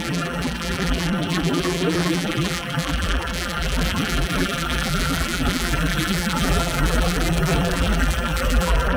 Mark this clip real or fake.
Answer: fake